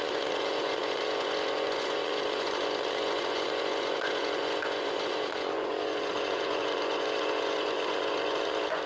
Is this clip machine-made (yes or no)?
yes